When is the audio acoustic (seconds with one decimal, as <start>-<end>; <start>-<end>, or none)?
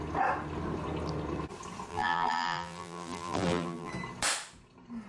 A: 0.0-1.9; 3.9-5.1